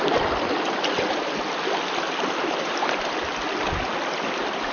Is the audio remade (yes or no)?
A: no